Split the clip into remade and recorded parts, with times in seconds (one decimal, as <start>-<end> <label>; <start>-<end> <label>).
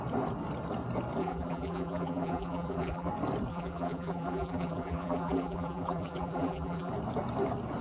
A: 0.0-1.2 recorded; 1.2-3.1 remade; 3.1-3.5 recorded; 3.5-6.9 remade; 6.9-7.8 recorded